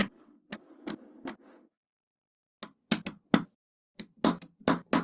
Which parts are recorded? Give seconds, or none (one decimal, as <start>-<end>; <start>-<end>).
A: 0.8-5.0